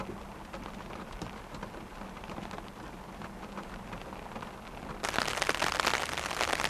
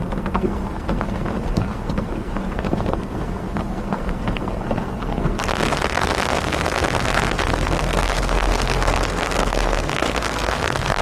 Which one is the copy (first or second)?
second